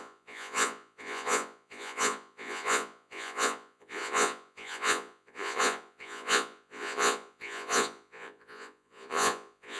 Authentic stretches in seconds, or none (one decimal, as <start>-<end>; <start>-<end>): none